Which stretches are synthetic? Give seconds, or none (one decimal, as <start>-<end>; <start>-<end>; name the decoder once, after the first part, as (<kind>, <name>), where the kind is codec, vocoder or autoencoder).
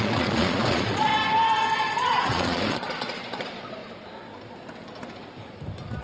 0.0-1.1 (vocoder, Vocos); 1.7-3.8